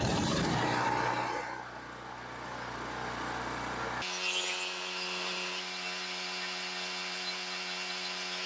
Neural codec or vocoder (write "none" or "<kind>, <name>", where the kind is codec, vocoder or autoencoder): none